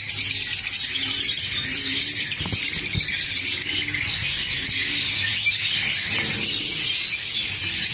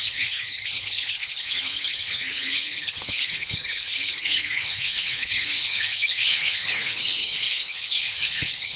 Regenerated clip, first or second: second